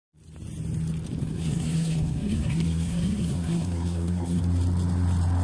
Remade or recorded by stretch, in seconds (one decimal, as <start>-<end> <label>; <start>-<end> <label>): 0.0-1.2 recorded; 1.2-4.4 remade; 4.4-5.4 recorded